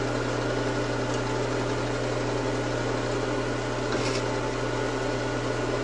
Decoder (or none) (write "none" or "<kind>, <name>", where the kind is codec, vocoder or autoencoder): none